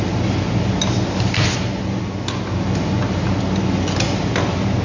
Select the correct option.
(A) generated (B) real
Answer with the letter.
B